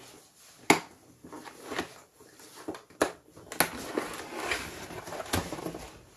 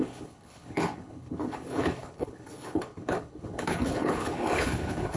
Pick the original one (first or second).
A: first